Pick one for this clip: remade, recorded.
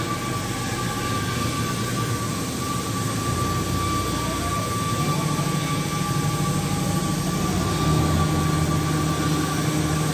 recorded